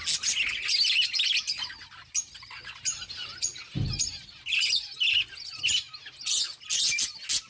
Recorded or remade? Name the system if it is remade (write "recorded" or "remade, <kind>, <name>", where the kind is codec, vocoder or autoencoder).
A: recorded